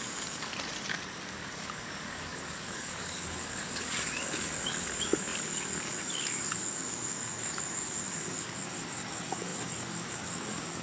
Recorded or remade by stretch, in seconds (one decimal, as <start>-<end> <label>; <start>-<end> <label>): 0.0-0.5 remade; 0.5-1.3 recorded; 1.3-10.8 remade